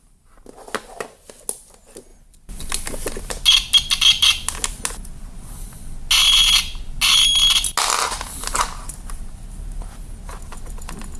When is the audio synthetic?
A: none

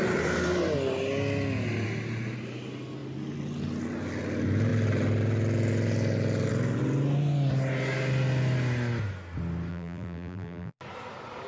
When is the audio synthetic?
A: 9.7-10.8 (vocoder, BigVGAN v2)